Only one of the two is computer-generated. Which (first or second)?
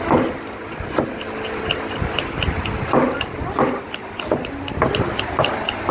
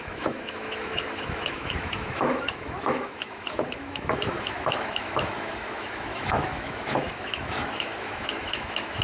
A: second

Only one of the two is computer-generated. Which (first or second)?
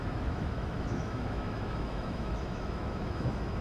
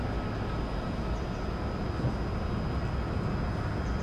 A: first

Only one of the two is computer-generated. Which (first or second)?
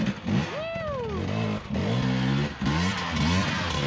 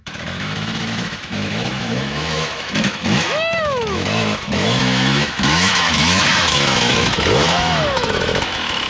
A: second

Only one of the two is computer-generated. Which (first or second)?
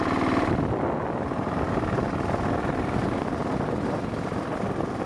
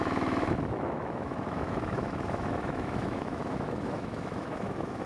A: second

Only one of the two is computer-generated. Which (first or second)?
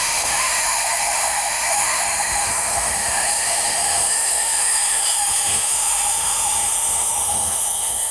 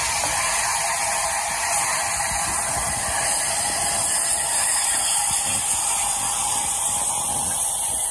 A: first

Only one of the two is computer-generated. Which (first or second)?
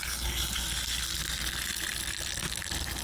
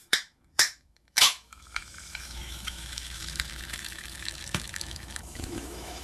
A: second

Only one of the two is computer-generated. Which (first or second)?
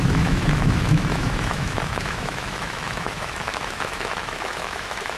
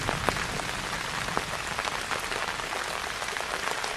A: first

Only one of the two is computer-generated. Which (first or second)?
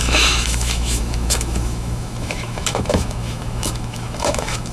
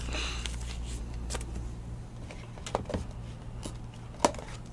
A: first